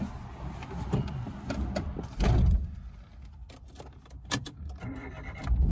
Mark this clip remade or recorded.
recorded